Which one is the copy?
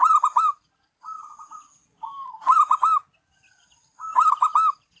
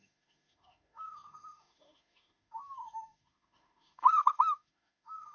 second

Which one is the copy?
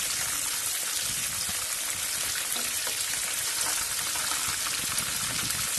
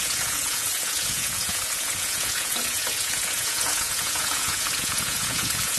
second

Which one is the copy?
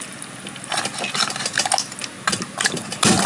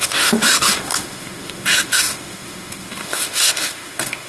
second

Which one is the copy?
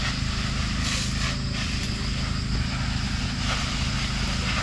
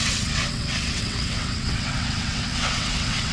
second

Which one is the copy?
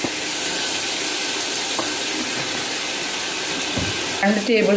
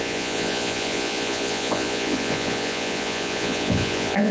second